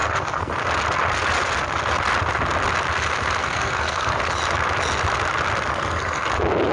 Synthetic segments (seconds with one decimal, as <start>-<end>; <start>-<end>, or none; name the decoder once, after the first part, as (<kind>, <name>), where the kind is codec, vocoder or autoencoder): 0.0-0.5 (codec, SNAC); 3.4-4.2; 5.7-6.3